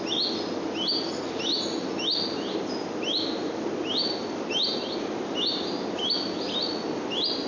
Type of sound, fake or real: real